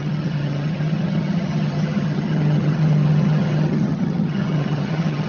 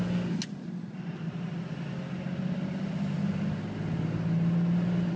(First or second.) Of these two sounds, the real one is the second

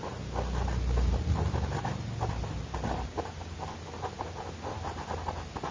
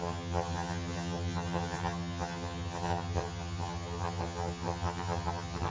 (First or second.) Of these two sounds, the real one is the first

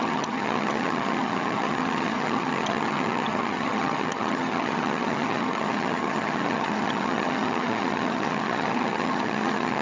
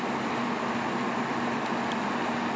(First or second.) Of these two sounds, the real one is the second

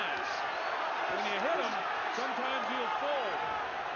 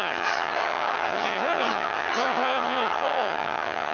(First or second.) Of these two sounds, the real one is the first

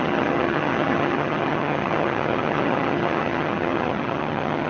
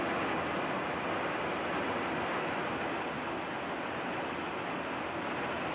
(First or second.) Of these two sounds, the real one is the second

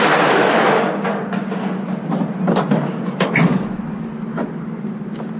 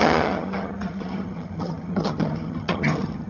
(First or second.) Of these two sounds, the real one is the first